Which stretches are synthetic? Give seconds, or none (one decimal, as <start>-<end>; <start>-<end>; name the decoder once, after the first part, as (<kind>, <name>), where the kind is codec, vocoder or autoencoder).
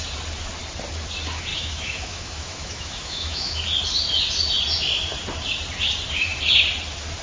1.5-3.6 (autoencoder, DAC-VAE)